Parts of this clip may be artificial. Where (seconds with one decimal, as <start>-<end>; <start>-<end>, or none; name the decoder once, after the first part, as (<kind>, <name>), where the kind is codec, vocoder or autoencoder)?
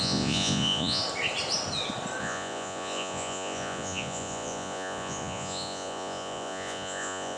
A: 0.0-1.0 (vocoder, Vocos); 2.2-7.4